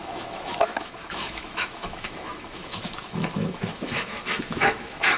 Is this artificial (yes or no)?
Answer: yes